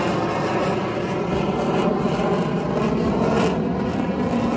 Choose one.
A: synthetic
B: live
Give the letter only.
B